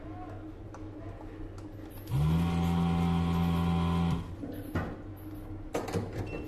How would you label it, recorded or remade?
recorded